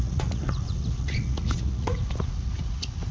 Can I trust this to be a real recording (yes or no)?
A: no